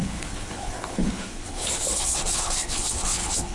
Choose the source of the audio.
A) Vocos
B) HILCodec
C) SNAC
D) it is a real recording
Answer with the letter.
B